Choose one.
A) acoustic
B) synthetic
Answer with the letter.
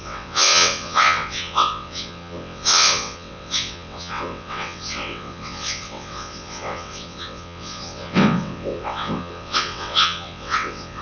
B